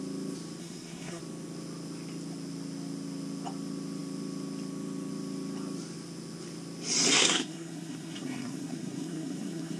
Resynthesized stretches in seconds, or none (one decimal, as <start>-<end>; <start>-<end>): 0.6-1.2; 7.1-9.8